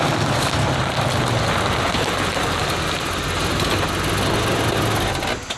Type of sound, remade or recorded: recorded